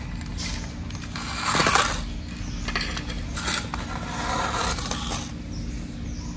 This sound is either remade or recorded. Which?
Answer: recorded